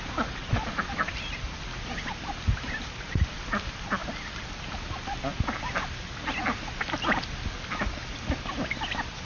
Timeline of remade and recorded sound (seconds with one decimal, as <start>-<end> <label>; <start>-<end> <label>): 0.0-9.3 recorded

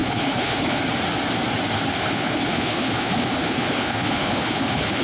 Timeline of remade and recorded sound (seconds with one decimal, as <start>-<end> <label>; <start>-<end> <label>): 0.0-0.8 remade; 0.8-1.9 recorded; 1.9-5.0 remade